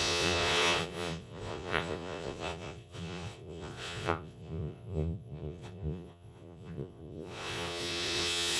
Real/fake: fake